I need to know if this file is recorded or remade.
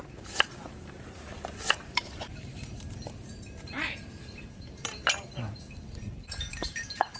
remade